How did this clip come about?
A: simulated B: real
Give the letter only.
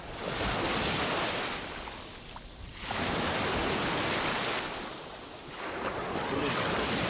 B